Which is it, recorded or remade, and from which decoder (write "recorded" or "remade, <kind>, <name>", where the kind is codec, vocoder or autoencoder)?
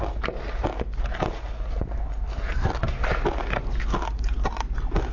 recorded